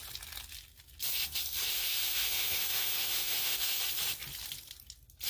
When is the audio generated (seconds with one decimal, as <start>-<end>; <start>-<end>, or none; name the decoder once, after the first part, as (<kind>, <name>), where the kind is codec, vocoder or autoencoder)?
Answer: 1.7-3.8 (autoencoder, DAC-VAE)